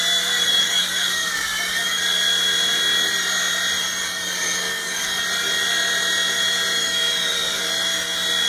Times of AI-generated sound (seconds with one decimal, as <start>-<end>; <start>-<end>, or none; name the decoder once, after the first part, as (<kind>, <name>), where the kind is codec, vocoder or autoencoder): 0.6-2.0 (codec, DAC); 4.0-5.2; 6.8-7.6